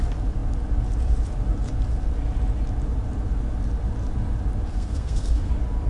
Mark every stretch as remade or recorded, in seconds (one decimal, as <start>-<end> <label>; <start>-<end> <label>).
0.0-4.7 recorded; 4.7-5.5 remade; 5.5-5.9 recorded